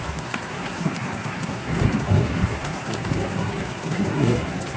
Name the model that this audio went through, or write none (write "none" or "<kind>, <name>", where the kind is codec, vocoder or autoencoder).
codec, SNAC